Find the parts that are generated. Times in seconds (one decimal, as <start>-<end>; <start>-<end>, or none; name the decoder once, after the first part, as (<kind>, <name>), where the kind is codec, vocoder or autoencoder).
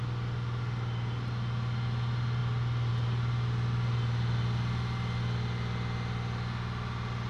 none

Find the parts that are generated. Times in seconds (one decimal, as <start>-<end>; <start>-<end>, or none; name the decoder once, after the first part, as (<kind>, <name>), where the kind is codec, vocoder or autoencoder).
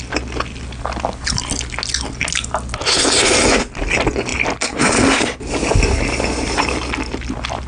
none